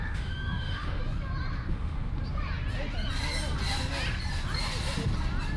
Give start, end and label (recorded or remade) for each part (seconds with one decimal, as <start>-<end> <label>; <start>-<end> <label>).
0.0-1.0 remade; 1.0-1.7 recorded; 1.7-2.1 remade; 2.1-5.6 recorded

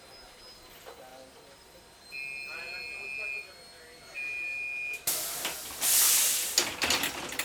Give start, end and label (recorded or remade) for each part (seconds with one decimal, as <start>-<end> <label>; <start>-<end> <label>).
0.0-7.4 recorded

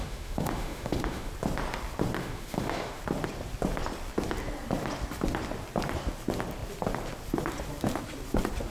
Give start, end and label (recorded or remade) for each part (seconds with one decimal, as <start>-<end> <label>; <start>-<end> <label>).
0.0-1.3 remade; 1.3-2.2 recorded; 2.2-3.0 remade; 3.0-8.7 recorded

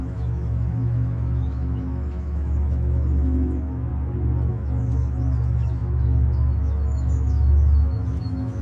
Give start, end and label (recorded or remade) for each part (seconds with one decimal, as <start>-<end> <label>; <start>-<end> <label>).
0.0-3.9 remade; 3.9-4.5 recorded; 4.5-8.6 remade

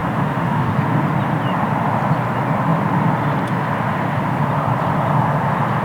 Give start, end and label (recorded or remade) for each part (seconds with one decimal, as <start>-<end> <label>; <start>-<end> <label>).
0.0-0.7 remade; 0.7-5.8 recorded

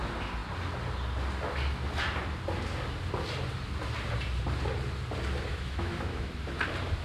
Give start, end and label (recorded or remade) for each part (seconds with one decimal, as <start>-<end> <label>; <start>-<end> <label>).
0.0-5.5 recorded; 5.5-6.3 remade; 6.3-7.0 recorded